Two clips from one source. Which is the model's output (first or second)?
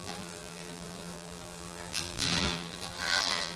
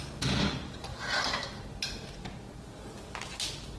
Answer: first